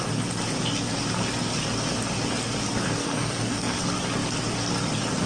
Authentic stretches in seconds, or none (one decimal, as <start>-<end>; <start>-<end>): 0.0-3.0; 3.8-5.3